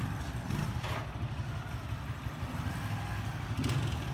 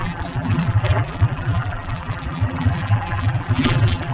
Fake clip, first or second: second